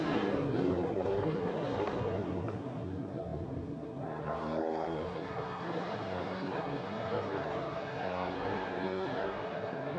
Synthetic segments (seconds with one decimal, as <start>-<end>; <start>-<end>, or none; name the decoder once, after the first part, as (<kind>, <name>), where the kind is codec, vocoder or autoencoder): 0.0-10.0 (codec, SNAC)